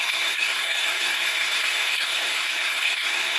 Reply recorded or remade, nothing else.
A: remade